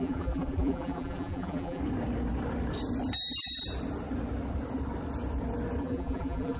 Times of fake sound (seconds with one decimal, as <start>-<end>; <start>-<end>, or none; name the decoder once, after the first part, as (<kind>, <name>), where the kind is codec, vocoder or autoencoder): 0.0-1.8 (vocoder, BigVGAN v2); 5.8-6.6